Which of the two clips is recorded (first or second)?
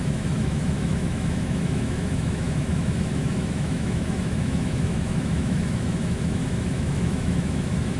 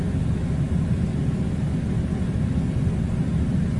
second